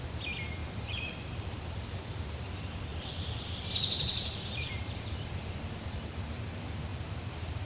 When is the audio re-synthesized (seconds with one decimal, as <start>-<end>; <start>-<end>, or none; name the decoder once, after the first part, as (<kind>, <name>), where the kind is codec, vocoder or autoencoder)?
0.6-2.0 (vocoder, BigVGAN v2); 2.9-6.0